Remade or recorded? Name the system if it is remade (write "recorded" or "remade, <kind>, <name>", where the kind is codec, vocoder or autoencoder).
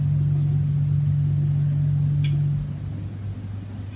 recorded